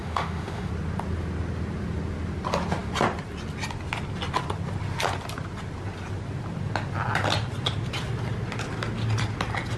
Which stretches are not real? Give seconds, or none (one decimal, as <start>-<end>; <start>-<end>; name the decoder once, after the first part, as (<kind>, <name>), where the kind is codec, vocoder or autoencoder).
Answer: 0.0-0.7 (autoencoder, DAC-VAE)